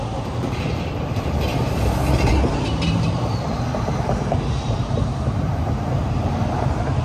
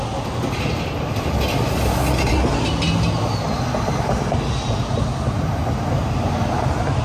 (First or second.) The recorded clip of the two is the second